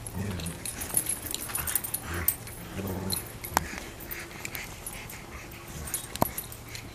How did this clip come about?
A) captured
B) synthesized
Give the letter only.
A